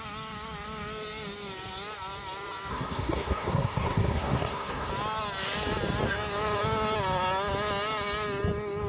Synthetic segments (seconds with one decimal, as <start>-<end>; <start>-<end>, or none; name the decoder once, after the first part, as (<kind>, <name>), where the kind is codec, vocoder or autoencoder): 2.7-4.9 (codec, SNAC)